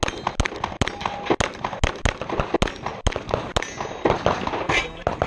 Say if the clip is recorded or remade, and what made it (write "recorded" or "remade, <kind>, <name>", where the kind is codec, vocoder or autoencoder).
recorded